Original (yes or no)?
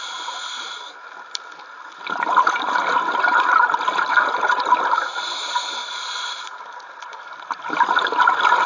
yes